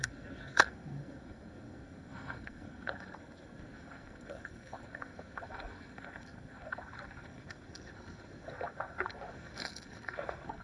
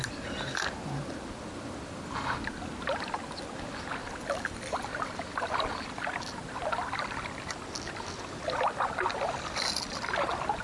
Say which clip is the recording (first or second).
second